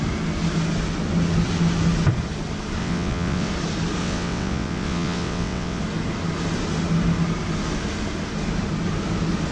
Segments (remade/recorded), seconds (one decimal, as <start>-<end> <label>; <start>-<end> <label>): 0.0-2.8 recorded; 2.8-3.5 remade; 3.5-4.0 recorded; 4.0-5.8 remade; 5.8-9.5 recorded